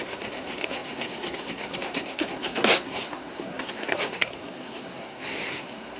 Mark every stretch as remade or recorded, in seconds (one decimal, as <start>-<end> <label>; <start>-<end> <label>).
0.0-6.0 remade